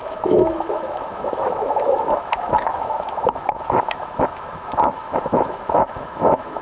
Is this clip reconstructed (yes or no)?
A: yes